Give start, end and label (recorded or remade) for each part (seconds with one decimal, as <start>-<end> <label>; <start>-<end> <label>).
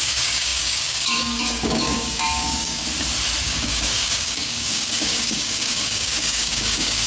0.0-2.8 remade; 2.8-3.4 recorded; 3.4-7.1 remade